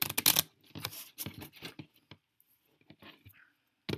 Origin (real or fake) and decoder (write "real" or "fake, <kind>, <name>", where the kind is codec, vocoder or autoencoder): real